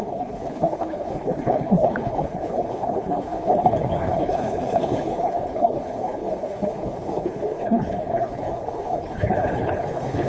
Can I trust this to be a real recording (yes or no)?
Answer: no